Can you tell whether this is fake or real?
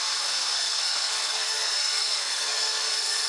fake